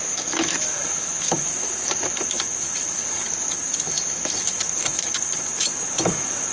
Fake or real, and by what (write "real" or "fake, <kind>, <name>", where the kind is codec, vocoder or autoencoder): fake, autoencoder, DAC-VAE